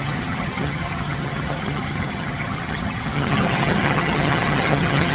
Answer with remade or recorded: remade